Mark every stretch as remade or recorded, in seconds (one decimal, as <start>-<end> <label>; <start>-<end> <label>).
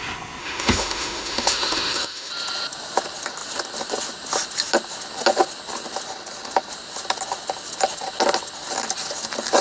0.0-0.4 recorded; 0.4-2.3 remade; 2.3-9.6 recorded